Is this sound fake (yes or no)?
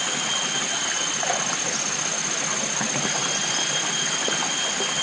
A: no